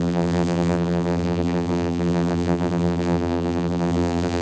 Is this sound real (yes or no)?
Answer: no